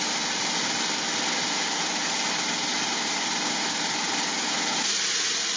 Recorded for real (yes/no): yes